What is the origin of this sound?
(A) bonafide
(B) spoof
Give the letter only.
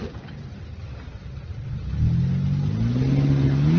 A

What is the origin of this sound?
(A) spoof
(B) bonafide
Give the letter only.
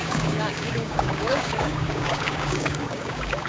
A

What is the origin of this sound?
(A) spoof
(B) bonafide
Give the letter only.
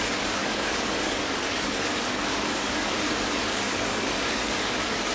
A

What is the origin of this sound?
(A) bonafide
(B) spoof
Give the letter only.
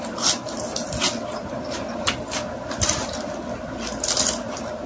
A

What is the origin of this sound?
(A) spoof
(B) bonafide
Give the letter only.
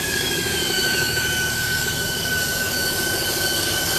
A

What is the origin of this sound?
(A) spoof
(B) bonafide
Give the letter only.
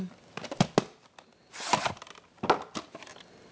B